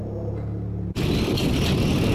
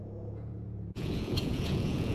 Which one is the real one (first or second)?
first